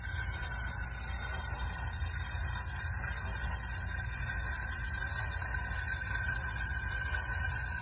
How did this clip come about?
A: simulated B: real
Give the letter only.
B